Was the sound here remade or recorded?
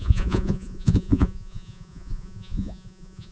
remade